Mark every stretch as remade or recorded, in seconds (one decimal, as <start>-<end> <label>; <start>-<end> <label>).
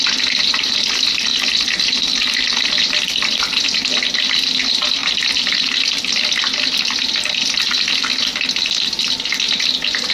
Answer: 0.0-10.1 recorded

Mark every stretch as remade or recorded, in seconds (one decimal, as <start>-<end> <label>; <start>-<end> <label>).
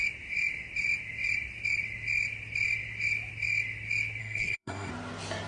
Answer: 0.0-4.2 recorded; 4.2-4.9 remade; 4.9-5.5 recorded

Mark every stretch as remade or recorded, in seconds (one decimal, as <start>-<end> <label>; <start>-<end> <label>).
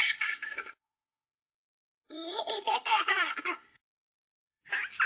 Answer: 0.0-4.6 remade; 4.6-5.1 recorded